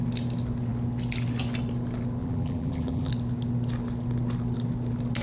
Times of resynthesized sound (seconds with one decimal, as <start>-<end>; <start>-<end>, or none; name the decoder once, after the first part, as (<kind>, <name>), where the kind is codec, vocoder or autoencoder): 2.2-3.1 (vocoder, BigVGAN v2)